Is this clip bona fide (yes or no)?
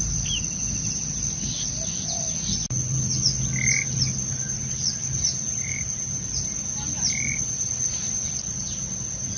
yes